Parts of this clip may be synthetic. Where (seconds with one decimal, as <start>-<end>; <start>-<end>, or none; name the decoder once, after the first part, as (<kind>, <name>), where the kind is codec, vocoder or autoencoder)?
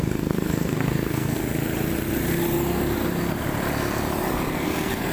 0.0-1.4 (codec, SNAC); 4.5-5.1